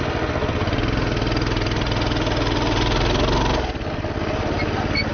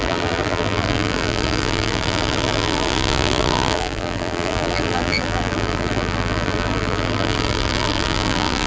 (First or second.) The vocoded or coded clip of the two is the second